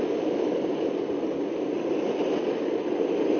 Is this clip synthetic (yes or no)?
no